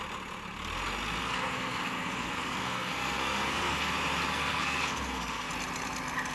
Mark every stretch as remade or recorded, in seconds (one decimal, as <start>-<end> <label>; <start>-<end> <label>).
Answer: 0.0-1.2 recorded; 1.2-3.9 remade; 3.9-4.3 recorded; 4.3-5.5 remade; 5.5-6.3 recorded